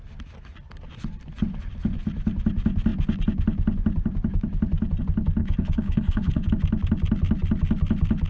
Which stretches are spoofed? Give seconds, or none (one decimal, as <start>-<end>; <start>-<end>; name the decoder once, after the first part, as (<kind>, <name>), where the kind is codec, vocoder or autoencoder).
5.4-6.5 (codec, HILCodec)